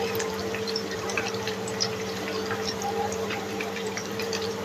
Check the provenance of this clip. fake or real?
fake